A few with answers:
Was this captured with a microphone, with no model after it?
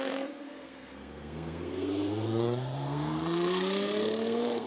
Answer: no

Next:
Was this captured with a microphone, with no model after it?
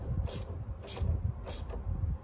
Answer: yes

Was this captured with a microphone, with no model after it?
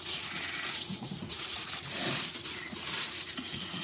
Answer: no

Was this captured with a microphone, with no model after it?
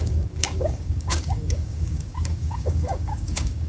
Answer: no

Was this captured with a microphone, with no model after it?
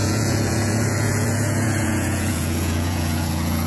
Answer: no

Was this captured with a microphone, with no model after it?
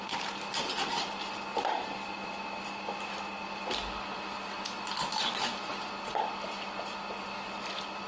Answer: yes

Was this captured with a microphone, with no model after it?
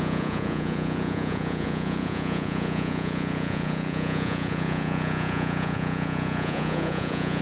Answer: no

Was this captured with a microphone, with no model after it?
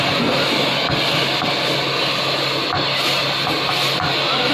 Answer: yes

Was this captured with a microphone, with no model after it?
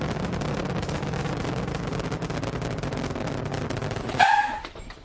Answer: yes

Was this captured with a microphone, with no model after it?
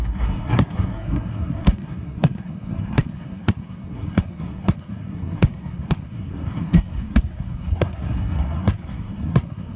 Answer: no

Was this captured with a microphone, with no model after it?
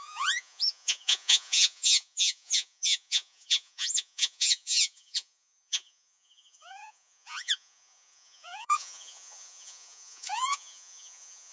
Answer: no